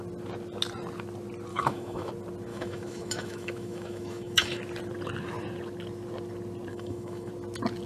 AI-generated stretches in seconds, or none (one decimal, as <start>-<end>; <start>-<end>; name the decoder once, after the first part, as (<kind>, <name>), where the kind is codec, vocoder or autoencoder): 1.5-2.1 (autoencoder, DAC-VAE); 2.5-4.6; 6.7-7.3